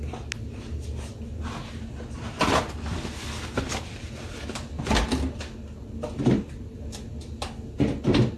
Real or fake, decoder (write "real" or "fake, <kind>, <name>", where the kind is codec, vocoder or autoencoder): real